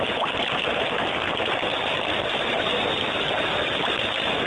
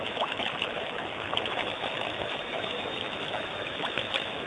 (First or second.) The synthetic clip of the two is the second